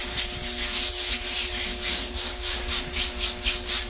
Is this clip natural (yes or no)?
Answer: yes